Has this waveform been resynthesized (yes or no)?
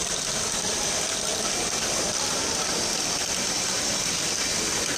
no